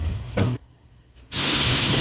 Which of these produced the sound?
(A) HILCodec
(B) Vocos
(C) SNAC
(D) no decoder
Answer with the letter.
C